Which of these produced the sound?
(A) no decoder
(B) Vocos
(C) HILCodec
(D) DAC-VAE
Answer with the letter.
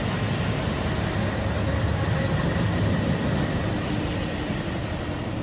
A